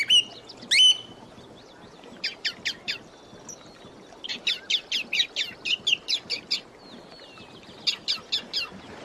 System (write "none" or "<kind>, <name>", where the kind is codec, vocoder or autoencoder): none